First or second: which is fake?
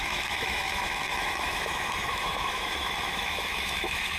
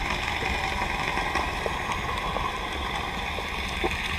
first